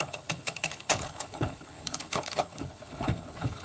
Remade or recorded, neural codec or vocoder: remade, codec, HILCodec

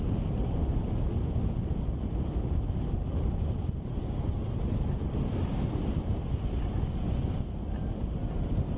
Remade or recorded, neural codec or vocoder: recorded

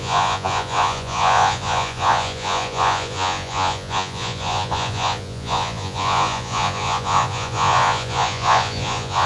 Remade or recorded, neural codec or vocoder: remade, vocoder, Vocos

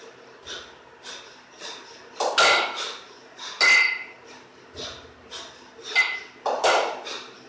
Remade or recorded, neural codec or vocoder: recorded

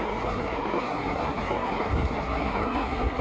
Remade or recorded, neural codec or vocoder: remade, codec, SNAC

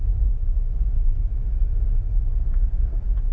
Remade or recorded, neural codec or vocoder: recorded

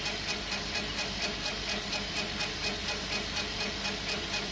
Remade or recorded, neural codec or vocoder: recorded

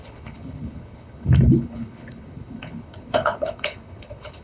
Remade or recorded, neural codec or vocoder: remade, codec, HILCodec